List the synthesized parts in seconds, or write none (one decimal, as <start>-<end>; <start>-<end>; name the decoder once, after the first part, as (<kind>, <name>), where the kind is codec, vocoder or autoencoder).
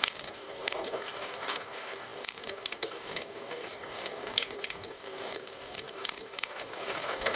0.0-7.4 (codec, DAC)